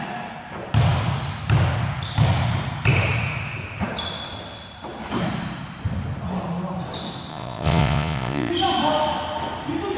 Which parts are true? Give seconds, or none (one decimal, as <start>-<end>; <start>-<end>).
0.0-7.3; 8.5-10.0